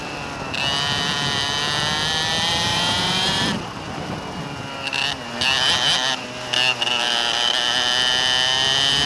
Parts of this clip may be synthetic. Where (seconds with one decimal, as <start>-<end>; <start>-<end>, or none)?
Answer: 2.7-3.4